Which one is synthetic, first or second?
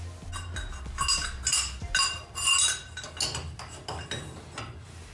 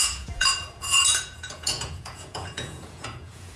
second